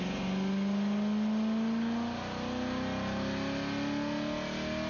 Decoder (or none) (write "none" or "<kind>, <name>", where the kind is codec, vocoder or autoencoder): none